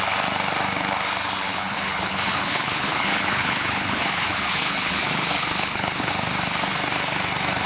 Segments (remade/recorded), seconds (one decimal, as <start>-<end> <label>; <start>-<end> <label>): 0.0-1.5 recorded; 1.5-6.1 remade; 6.1-7.7 recorded